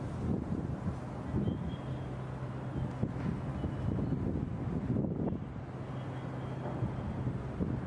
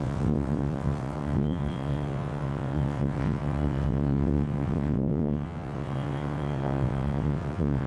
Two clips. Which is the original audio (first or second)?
first